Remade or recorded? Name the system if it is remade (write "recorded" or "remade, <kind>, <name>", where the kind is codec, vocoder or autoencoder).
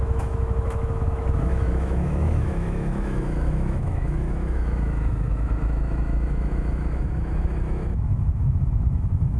remade, autoencoder, DAC-VAE